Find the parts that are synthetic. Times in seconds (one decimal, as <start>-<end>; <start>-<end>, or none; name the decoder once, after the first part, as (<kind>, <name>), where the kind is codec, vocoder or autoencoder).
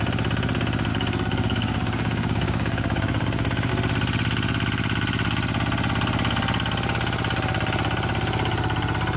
0.9-3.7 (codec, DAC)